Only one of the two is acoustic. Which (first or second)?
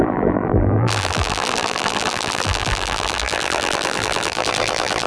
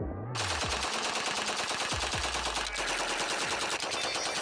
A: second